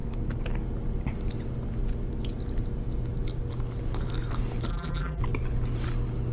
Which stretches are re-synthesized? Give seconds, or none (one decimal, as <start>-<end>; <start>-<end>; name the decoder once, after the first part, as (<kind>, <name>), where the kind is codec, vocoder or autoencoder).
4.7-5.2 (vocoder, BigVGAN v2)